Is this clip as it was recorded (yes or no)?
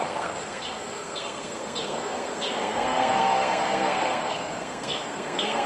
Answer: no